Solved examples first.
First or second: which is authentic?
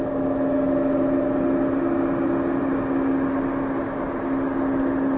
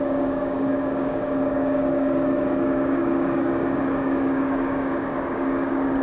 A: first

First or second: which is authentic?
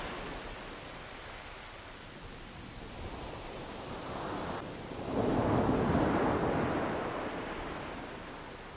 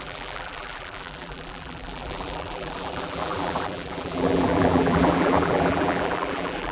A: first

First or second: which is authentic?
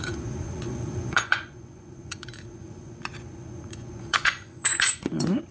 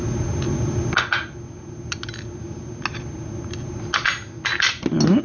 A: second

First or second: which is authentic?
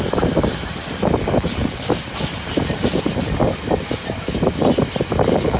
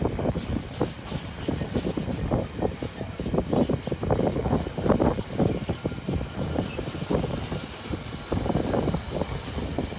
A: second